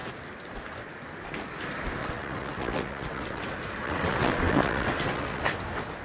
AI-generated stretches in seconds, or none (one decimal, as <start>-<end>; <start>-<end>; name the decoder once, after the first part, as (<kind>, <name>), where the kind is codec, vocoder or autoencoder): 2.0-3.4 (vocoder, WaveNeXt); 3.8-5.4

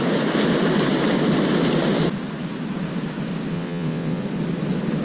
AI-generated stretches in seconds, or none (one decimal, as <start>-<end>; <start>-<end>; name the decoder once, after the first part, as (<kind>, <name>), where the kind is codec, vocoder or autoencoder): 3.5-4.2 (vocoder, WaveNeXt)

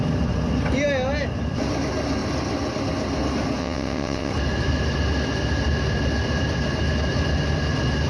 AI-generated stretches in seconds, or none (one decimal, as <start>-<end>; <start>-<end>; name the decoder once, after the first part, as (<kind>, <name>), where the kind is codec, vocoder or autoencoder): 3.6-4.3 (vocoder, WaveNeXt)